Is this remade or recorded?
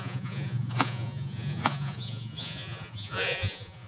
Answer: remade